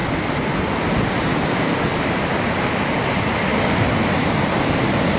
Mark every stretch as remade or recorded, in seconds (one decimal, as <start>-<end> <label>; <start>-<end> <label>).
0.0-5.2 recorded